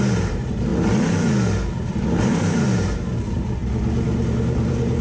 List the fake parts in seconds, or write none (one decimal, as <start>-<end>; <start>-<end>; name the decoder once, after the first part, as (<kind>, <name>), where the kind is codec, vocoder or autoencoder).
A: 0.0-0.7 (vocoder, BigVGAN v2); 2.2-3.6; 4.3-5.0